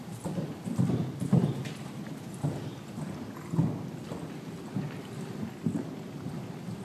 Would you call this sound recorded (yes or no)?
yes